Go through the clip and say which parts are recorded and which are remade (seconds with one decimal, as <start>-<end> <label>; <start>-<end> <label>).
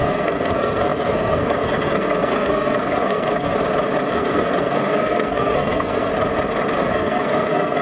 0.0-3.5 remade; 3.5-4.1 recorded; 4.1-6.1 remade; 6.1-6.8 recorded; 6.8-7.8 remade